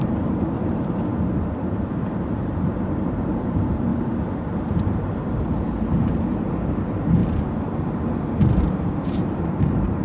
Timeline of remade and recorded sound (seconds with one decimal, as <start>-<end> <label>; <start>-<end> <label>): 0.0-1.1 remade; 1.1-1.7 recorded; 1.7-3.9 remade; 3.9-4.7 recorded; 4.7-7.2 remade; 7.2-8.7 recorded; 8.7-10.0 remade